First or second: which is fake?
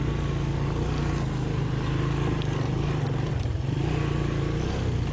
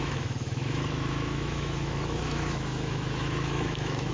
second